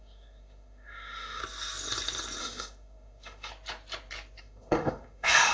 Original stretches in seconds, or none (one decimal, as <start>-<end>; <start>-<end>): 1.4-2.4; 3.5-4.4